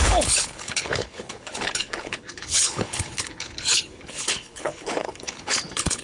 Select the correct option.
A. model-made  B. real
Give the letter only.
A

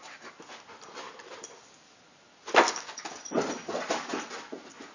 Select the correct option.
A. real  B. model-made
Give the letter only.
A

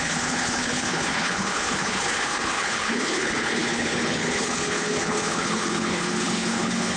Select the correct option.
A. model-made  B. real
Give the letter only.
A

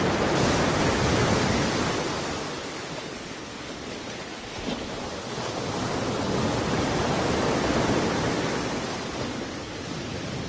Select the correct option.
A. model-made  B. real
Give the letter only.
B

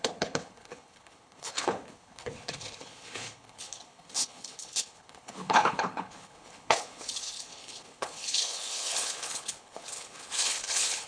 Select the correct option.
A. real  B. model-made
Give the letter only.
B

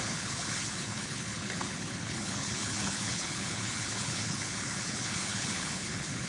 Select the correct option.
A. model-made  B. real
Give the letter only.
A